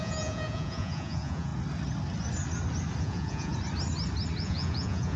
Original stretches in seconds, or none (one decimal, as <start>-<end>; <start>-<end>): 1.5-3.0; 3.5-4.4